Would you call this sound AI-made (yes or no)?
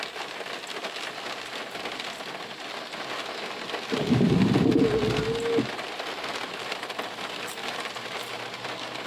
no